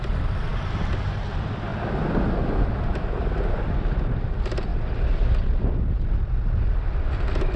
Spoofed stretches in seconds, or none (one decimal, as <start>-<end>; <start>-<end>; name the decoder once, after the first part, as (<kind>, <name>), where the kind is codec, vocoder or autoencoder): none